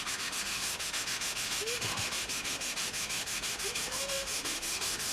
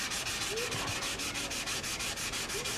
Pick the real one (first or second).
second